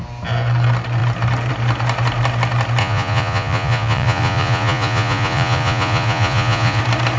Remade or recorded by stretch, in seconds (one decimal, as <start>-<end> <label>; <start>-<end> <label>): 0.0-2.8 recorded; 2.8-6.8 remade; 6.8-7.2 recorded